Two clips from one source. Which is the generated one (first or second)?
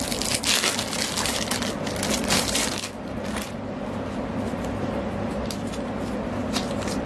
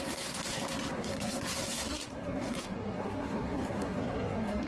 second